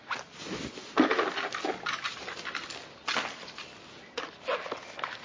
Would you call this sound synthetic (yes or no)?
no